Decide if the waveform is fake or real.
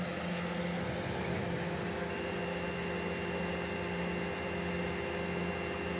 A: real